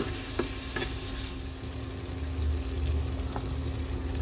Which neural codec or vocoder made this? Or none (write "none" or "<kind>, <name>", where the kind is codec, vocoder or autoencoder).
none